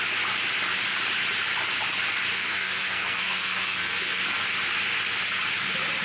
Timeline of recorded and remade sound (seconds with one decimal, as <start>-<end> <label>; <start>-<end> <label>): 0.0-2.3 recorded; 2.3-4.2 remade; 4.2-6.0 recorded